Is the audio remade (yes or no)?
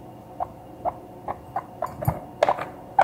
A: no